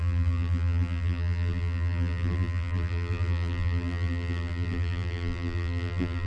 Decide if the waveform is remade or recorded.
remade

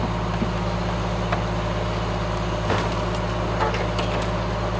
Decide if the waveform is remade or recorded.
recorded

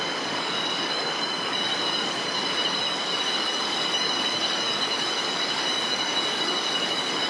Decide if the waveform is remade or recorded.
remade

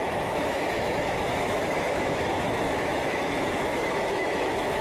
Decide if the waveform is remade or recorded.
remade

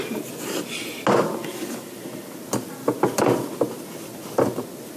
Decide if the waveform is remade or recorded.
recorded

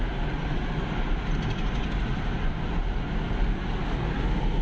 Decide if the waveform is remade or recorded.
recorded